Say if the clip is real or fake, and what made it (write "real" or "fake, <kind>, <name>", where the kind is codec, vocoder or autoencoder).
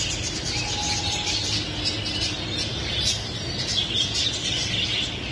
real